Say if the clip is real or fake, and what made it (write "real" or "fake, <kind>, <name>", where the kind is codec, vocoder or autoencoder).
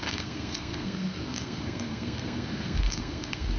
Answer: fake, codec, SNAC